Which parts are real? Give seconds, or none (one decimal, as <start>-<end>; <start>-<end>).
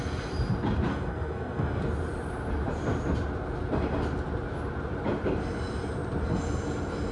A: 0.0-0.9; 1.8-7.1